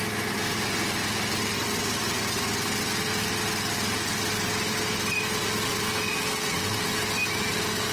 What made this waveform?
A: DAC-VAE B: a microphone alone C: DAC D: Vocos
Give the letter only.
B